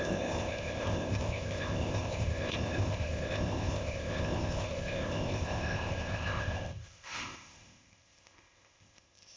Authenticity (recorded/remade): remade